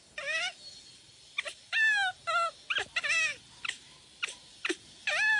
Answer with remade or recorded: recorded